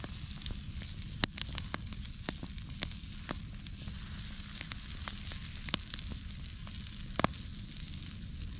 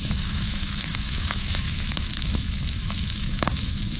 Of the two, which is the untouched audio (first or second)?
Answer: first